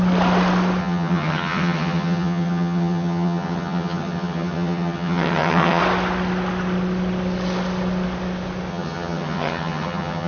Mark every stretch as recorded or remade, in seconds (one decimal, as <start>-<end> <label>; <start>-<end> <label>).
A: 0.0-0.8 recorded; 0.8-5.8 remade; 5.8-8.7 recorded; 8.7-10.3 remade